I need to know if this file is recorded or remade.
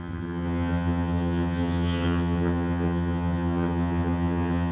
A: remade